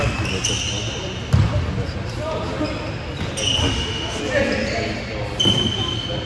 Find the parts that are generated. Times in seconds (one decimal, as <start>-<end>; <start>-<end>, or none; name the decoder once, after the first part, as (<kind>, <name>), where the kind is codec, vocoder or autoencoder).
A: 3.6-4.2 (autoencoder, DAC-VAE)